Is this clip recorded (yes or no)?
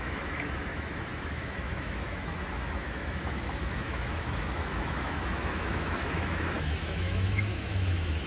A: no